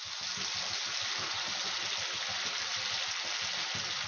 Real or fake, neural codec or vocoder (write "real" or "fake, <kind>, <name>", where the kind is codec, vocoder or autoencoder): real